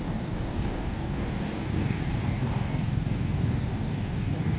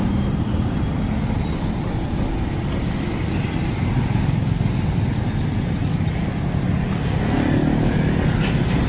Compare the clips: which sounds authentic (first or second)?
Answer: second